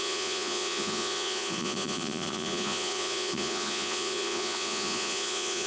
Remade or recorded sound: remade